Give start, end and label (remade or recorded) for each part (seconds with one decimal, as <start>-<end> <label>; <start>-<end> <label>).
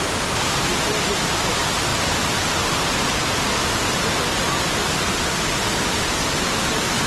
0.0-7.1 recorded